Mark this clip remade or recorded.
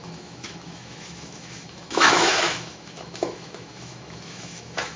remade